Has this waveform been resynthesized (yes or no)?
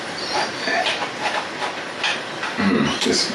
yes